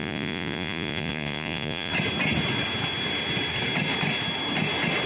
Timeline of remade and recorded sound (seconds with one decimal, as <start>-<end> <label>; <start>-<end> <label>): 0.0-1.9 remade; 1.9-5.1 recorded